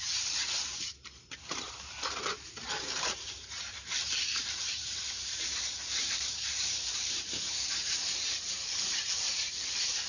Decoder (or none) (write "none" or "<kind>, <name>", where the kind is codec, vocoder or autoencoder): vocoder, BigVGAN v2